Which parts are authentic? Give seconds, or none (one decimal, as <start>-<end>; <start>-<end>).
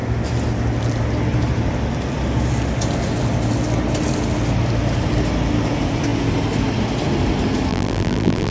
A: 0.0-7.7